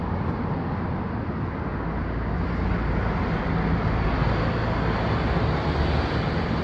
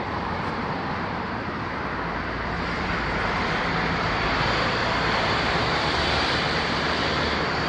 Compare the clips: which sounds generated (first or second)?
second